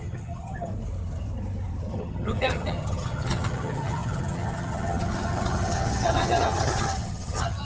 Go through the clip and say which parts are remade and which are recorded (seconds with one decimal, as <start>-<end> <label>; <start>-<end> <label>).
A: 0.0-0.7 remade; 0.7-1.9 recorded; 1.9-7.6 remade